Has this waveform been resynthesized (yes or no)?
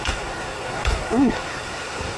yes